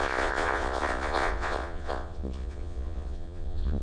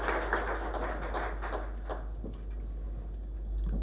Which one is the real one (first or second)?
second